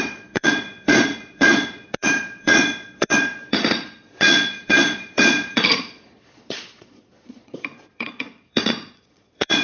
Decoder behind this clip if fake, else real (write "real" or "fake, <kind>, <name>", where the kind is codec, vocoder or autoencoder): fake, vocoder, Vocos